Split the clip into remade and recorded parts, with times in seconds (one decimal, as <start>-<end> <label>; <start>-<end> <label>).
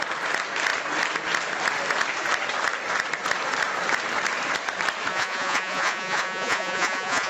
0.0-5.1 recorded; 5.1-7.3 remade